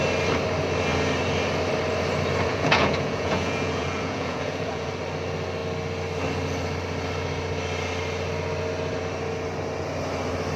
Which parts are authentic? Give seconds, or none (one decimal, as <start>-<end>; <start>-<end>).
0.0-2.5; 4.9-10.6